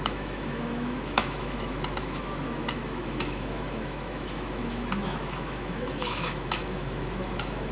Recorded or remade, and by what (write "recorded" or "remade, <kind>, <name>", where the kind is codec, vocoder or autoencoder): remade, autoencoder, DAC-VAE